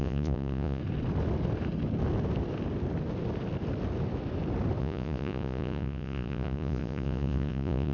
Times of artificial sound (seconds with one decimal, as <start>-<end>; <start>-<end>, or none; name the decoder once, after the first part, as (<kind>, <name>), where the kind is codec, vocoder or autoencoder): 0.0-0.8 (vocoder, Vocos); 4.8-7.9